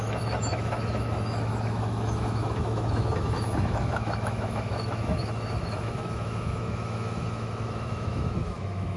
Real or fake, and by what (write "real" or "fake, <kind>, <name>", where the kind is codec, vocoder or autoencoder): fake, autoencoder, DAC-VAE